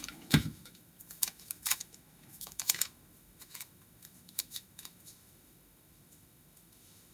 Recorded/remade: remade